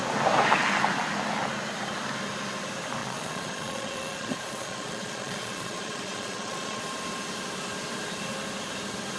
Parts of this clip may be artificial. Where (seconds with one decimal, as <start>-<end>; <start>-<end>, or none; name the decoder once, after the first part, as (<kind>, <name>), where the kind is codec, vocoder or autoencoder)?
3.0-6.8 (vocoder, Vocos)